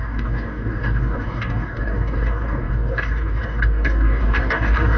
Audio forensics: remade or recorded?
remade